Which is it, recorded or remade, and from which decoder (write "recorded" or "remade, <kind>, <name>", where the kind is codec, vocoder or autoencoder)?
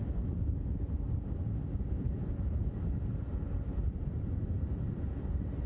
recorded